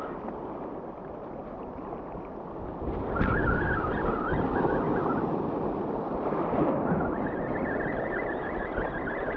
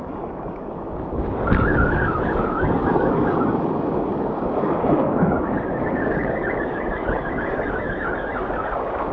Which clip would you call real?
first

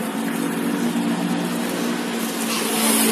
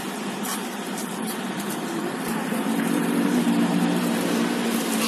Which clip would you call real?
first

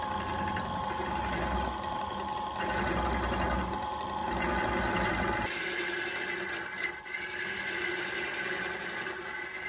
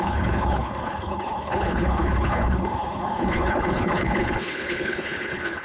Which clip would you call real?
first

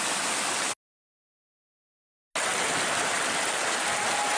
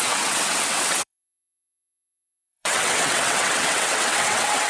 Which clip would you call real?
first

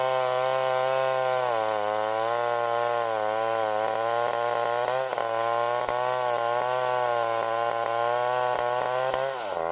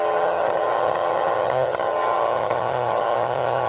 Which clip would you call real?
first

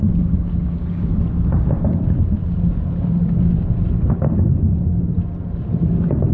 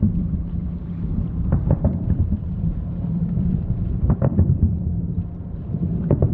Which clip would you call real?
first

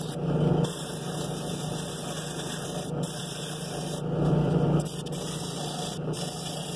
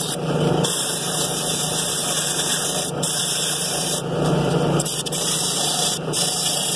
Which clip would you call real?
first